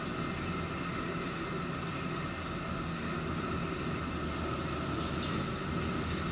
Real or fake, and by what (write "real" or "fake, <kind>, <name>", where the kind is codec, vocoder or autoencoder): real